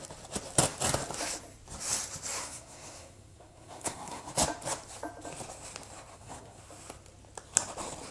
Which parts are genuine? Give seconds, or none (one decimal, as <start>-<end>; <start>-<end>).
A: 0.0-2.4; 4.3-6.1; 6.6-8.1